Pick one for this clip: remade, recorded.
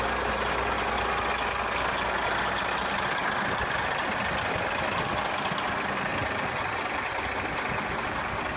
recorded